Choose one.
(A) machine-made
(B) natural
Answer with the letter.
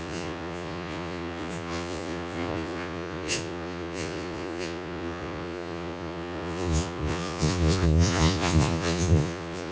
A